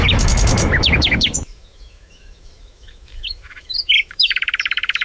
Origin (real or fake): fake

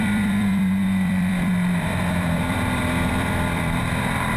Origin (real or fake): fake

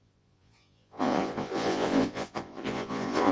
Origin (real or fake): fake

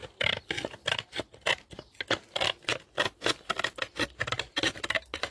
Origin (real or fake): real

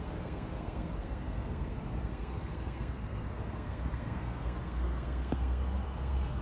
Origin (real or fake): fake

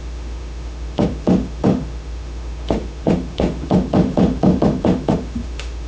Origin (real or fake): fake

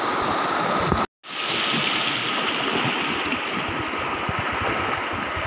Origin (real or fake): real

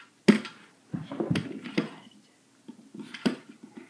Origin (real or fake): real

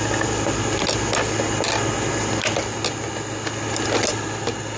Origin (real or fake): real